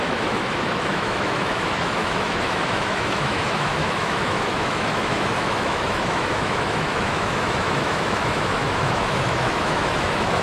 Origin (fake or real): fake